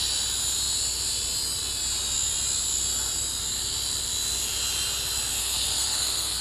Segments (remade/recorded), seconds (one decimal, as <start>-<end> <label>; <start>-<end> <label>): 0.0-5.4 recorded; 5.4-6.4 remade